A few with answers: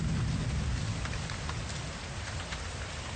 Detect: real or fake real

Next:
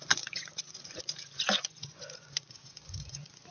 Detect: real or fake fake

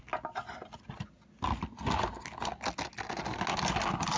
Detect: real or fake real